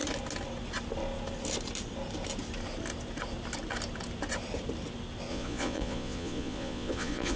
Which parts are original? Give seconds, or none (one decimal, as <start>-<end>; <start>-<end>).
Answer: 0.0-5.3